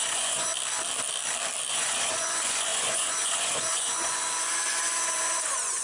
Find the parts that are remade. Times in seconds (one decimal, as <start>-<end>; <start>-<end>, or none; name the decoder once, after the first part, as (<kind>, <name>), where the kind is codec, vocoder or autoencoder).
0.0-0.5 (vocoder, Vocos); 1.7-5.8